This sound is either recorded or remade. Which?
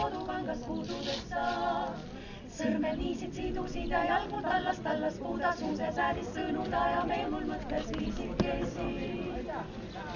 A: recorded